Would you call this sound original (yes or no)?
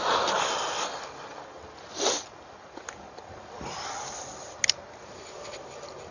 yes